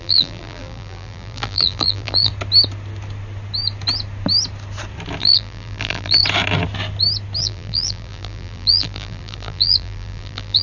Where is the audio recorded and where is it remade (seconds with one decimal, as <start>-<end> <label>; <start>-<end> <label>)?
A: 0.0-2.3 remade; 2.3-5.2 recorded; 5.2-6.2 remade; 6.2-7.4 recorded; 7.4-10.6 remade